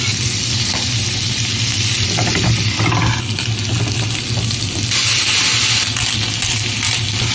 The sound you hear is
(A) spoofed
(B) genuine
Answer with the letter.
B